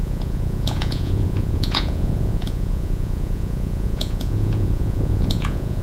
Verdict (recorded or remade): remade